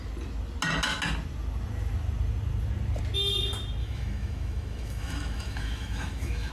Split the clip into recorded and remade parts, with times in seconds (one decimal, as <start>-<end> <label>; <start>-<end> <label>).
0.0-3.8 recorded; 3.8-6.5 remade